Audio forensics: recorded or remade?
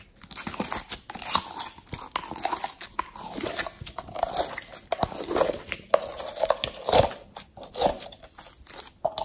recorded